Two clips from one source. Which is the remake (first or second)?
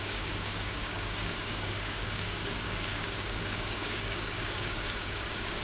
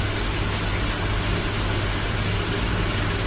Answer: first